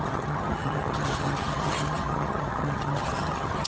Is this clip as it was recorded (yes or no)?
no